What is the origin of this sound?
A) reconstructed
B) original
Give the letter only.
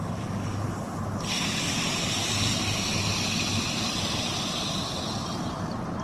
B